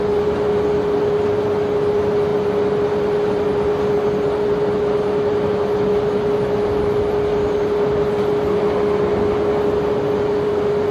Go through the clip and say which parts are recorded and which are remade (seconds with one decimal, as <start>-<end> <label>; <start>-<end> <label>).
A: 0.0-10.9 recorded